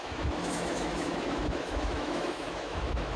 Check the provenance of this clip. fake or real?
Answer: fake